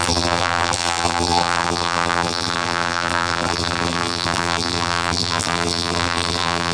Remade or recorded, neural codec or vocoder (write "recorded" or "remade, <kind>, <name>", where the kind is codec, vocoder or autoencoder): remade, vocoder, BigVGAN v2